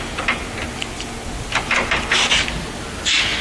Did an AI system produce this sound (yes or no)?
no